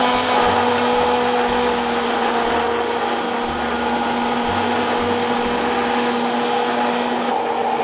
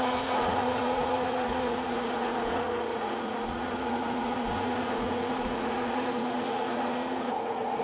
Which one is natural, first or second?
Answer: first